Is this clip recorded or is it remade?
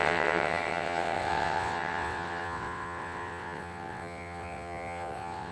remade